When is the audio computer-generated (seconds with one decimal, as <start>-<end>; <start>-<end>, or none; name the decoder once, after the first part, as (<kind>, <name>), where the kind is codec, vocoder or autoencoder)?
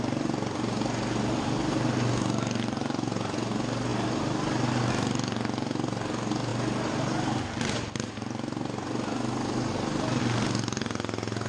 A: none